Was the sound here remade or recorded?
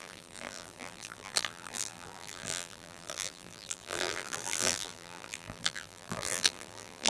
remade